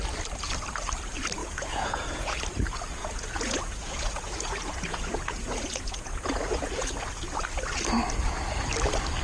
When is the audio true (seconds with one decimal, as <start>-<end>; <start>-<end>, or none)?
0.0-1.4; 2.4-3.0; 7.2-9.2